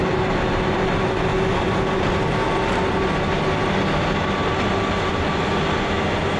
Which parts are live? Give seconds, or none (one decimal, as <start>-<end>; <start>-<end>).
0.0-6.4